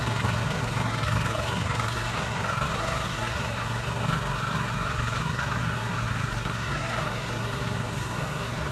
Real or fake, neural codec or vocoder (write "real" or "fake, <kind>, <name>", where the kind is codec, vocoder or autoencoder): fake, codec, SNAC